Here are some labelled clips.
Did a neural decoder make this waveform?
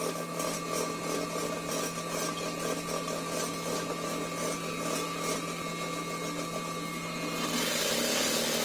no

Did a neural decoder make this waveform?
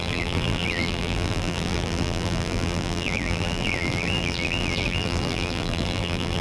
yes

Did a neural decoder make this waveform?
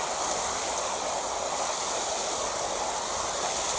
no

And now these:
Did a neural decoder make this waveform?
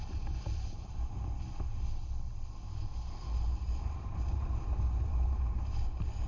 no